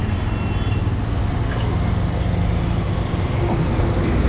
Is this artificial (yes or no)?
no